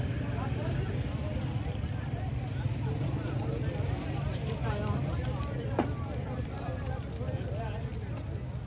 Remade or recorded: recorded